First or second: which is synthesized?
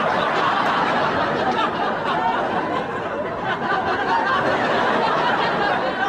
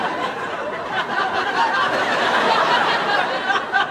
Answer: second